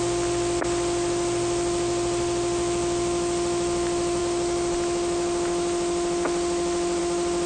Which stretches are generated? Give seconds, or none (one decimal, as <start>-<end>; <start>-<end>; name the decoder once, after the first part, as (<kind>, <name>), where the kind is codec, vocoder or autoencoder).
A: none